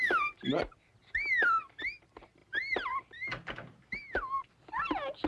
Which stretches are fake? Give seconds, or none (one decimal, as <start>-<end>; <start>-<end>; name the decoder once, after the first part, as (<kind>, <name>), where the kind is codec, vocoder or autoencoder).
none